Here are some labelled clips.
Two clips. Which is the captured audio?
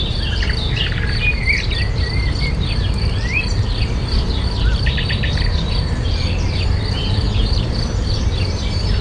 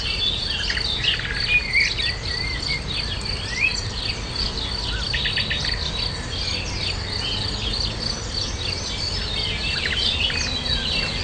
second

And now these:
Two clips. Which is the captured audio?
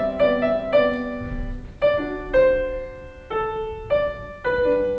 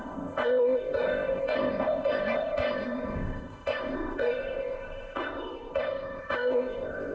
first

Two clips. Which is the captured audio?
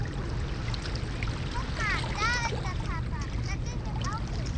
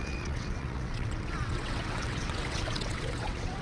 first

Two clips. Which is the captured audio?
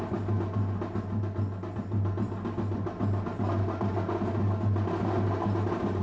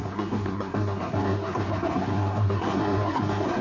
first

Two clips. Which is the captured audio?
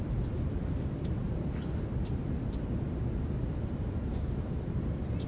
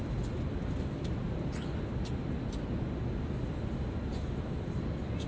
second